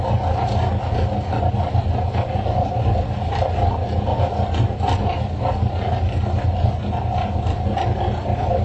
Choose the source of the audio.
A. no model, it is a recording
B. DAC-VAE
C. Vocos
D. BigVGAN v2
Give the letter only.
A